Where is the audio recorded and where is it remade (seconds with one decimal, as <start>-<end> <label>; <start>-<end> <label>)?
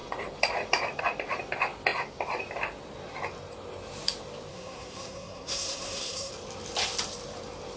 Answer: 0.0-4.5 recorded; 4.5-6.3 remade; 6.3-7.8 recorded